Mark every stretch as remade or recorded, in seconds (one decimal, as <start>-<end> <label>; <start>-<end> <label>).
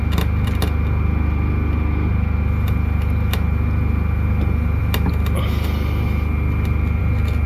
0.0-7.5 recorded